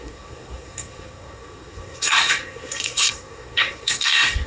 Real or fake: fake